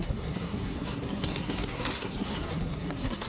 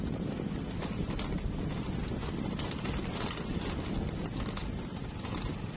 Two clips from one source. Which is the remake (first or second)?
first